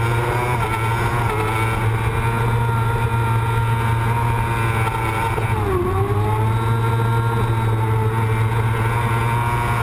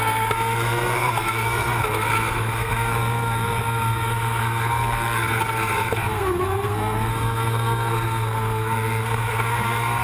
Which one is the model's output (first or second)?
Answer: second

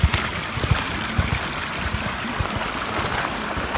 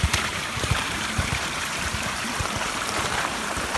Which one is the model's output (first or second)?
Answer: second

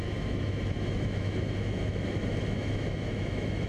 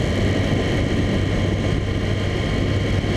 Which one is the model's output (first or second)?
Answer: first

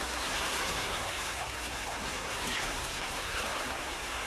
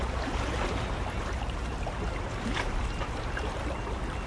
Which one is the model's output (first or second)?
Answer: first